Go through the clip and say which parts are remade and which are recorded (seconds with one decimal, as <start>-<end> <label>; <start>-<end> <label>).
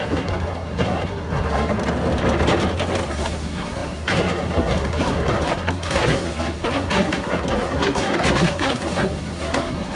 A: 0.0-1.8 remade; 1.8-3.1 recorded; 3.1-10.0 remade